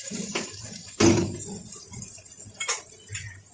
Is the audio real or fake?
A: real